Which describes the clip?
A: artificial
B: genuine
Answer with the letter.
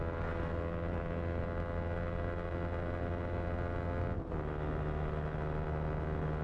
B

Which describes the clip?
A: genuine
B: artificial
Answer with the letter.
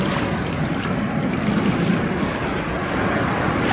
A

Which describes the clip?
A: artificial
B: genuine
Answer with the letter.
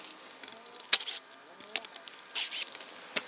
B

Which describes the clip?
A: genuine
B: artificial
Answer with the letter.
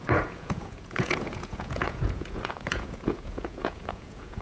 B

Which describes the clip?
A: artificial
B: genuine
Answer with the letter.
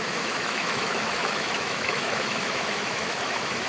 A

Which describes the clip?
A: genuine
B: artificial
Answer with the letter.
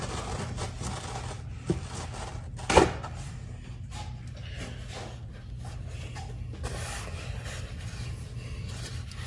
A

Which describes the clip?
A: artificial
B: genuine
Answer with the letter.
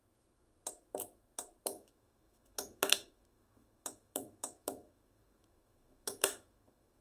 A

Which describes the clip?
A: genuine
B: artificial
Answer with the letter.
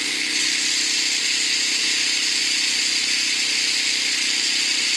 A